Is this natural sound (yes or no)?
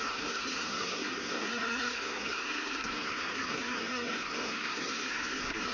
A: no